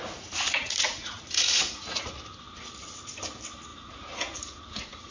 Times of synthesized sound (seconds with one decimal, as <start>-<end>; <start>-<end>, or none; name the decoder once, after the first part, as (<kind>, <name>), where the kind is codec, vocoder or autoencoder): 0.0-2.1 (vocoder, Vocos); 3.7-5.1